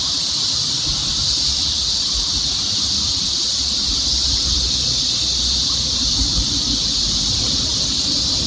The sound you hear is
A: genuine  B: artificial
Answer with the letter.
B